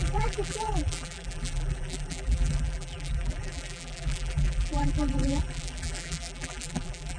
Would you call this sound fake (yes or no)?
yes